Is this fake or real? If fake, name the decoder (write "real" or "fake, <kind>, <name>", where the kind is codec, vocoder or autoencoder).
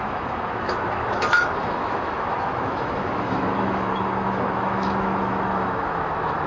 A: fake, autoencoder, DAC-VAE